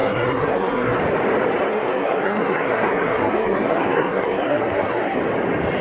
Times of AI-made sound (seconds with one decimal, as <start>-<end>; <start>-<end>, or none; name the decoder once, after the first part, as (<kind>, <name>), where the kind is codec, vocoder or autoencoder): 0.0-1.0 (codec, SNAC); 1.7-5.2

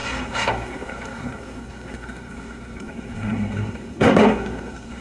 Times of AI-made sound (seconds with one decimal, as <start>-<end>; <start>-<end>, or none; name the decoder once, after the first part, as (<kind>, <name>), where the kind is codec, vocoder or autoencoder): 0.0-5.0 (codec, SNAC)